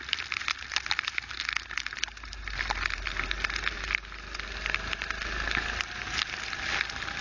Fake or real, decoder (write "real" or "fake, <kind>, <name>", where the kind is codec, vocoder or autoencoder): real